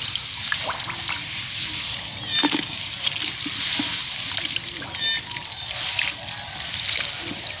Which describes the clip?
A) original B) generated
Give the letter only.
A